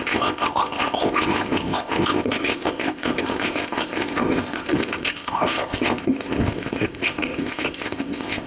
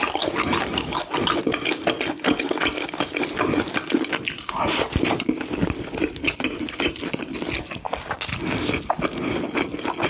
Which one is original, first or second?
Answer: second